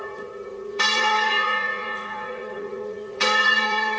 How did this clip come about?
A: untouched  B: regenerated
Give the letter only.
B